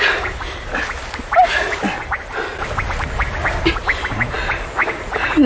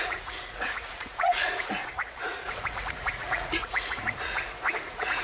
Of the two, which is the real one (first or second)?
first